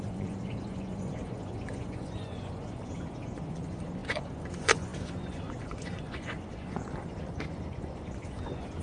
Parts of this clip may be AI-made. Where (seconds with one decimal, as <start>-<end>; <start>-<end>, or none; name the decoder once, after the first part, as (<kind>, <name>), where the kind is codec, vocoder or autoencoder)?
0.0-8.8 (vocoder, Vocos)